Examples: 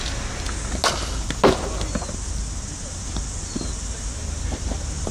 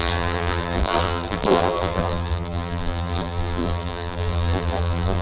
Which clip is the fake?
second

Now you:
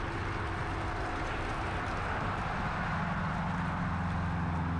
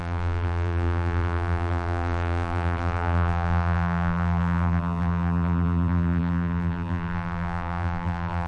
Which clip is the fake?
second